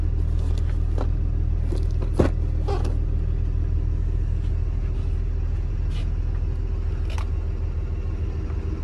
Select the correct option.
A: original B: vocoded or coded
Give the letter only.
A